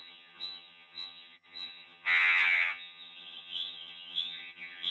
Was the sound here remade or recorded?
remade